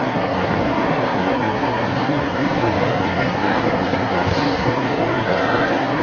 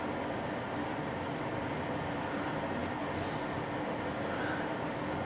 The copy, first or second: first